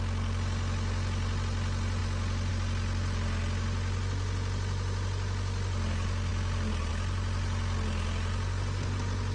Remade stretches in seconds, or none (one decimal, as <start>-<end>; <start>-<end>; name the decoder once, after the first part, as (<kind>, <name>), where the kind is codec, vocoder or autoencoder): none